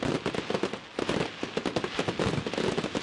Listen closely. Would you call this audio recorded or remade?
recorded